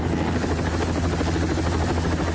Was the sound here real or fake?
real